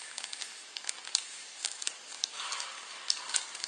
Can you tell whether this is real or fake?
fake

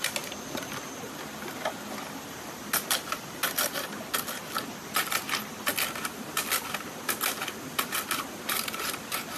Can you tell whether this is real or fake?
real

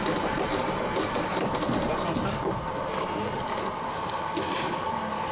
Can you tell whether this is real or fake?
real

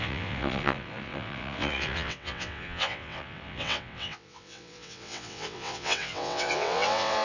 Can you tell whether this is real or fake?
fake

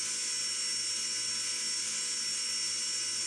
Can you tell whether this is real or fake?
real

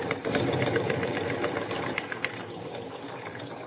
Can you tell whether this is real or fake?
fake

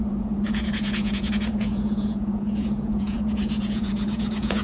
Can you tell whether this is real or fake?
fake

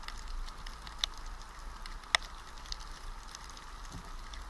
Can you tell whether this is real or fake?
real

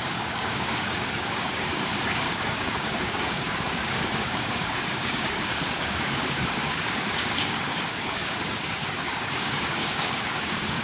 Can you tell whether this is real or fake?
fake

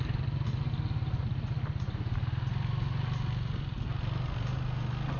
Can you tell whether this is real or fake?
real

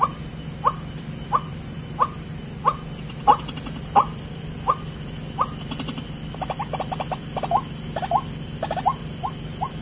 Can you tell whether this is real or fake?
real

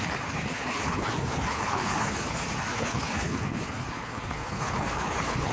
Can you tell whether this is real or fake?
fake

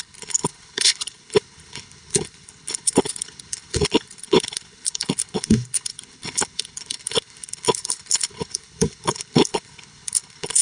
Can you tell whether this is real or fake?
fake